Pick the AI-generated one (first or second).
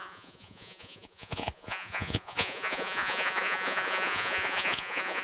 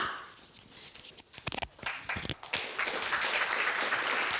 first